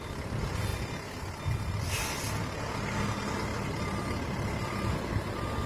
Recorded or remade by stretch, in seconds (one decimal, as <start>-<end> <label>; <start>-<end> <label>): 0.0-3.5 recorded; 3.5-4.9 remade; 4.9-5.7 recorded